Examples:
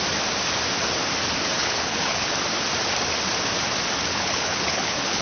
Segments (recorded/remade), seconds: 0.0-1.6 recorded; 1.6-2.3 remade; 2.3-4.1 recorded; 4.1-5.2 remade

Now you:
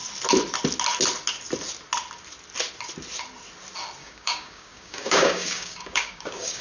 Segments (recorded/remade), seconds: 0.0-4.0 recorded; 4.0-6.6 remade

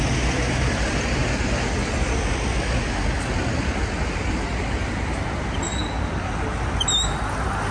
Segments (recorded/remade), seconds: 0.0-7.7 recorded

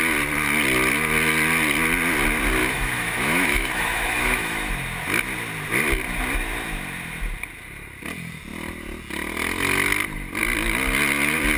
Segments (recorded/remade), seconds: 0.0-2.6 recorded; 2.6-4.7 remade; 4.7-11.6 recorded

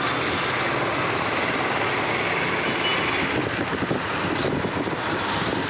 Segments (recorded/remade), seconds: 0.0-5.7 recorded

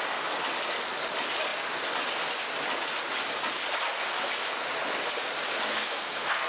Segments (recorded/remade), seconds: 0.0-5.7 recorded; 5.7-6.5 remade

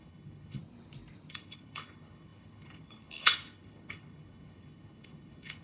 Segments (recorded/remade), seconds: 0.0-0.6 remade; 0.6-1.3 recorded; 1.3-5.6 remade